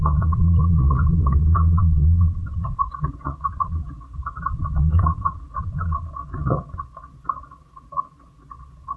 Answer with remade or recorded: remade